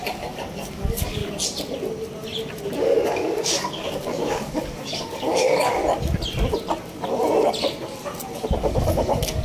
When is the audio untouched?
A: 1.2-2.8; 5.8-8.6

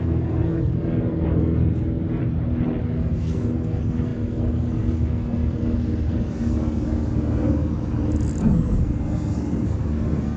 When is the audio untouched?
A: 2.2-2.8; 7.7-8.4

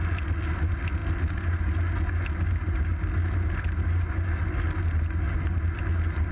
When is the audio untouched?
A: 0.0-6.3

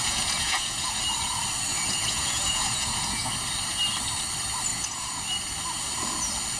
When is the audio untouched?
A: 1.0-1.7; 3.3-4.7; 5.2-6.6

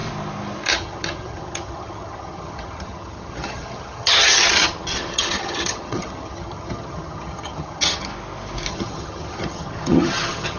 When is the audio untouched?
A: 0.0-0.7; 8.1-8.7

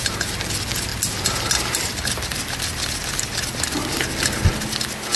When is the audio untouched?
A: 0.0-5.2

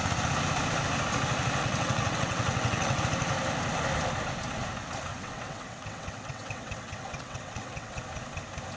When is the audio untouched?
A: 0.0-1.6; 3.0-5.1; 8.0-8.8